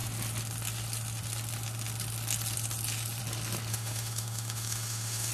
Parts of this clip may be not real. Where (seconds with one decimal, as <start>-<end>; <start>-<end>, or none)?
3.7-5.3